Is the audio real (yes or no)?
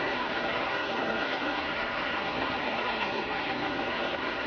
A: no